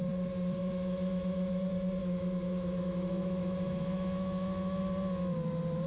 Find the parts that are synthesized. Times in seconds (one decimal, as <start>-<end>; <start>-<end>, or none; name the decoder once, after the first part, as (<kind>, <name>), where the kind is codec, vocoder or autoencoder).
0.6-1.5 (autoencoder, DAC-VAE); 2.0-4.8